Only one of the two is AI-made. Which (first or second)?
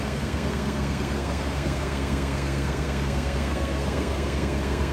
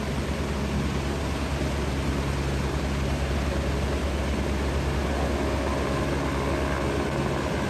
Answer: first